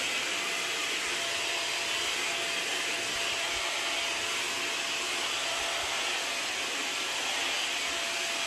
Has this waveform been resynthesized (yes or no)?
no